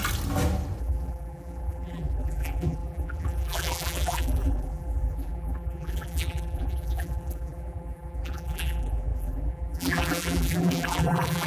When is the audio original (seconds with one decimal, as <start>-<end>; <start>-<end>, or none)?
0.0-0.8